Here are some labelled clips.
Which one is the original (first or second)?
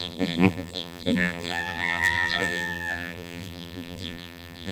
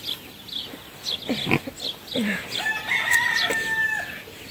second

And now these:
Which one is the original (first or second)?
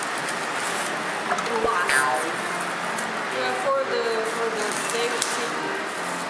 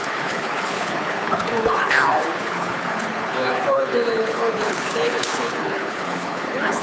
first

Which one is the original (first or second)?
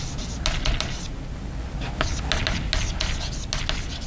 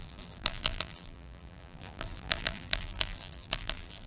first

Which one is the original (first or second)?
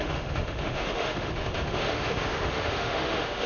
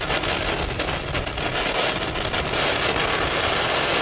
second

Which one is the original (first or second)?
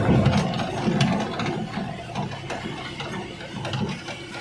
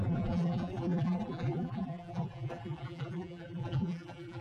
first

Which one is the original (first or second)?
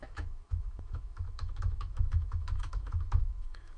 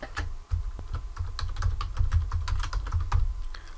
second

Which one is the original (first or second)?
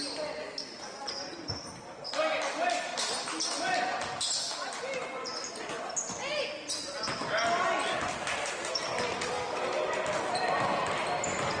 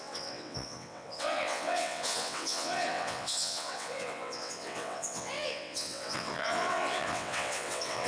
first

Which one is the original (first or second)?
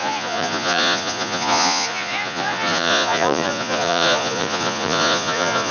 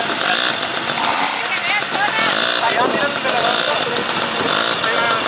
second